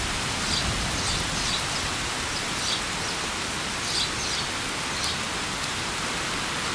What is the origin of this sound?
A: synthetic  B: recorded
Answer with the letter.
B